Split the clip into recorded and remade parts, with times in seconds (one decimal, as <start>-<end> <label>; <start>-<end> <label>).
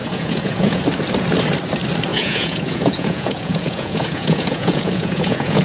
0.0-0.8 remade; 0.8-2.1 recorded; 2.1-5.6 remade